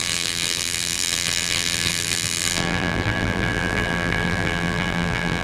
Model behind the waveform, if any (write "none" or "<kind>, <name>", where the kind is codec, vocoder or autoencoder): vocoder, BigVGAN v2